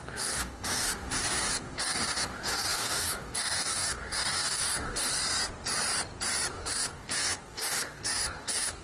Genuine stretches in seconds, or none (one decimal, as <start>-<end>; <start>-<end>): 5.1-6.5